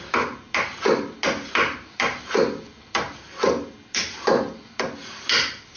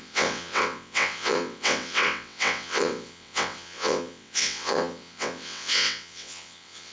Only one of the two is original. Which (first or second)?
first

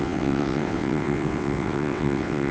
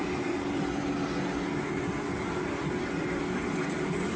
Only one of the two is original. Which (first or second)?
second